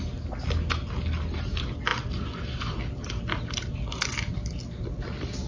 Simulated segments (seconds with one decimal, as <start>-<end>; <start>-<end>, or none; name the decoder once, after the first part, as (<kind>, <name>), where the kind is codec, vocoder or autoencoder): none